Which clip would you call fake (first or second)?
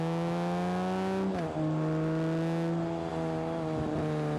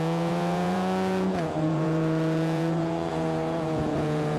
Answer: second